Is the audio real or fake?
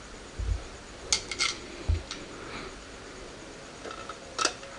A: real